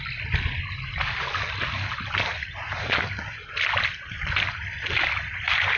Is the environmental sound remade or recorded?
recorded